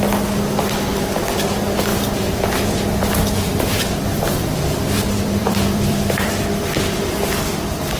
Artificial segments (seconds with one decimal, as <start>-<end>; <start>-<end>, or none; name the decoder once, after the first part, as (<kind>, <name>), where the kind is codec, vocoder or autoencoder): 1.9-6.3 (vocoder, BigVGAN v2)